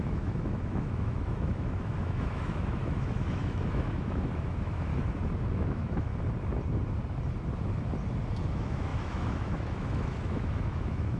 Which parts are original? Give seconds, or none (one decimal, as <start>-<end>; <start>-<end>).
4.9-5.5; 6.1-8.5